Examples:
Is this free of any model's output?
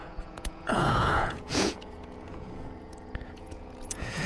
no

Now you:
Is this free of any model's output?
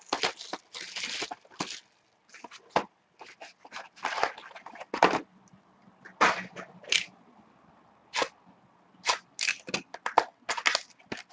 yes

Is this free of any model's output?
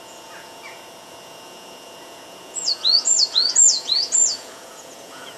no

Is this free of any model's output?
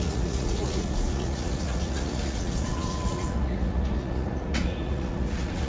no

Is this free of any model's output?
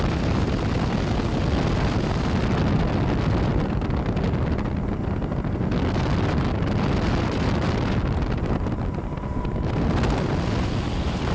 yes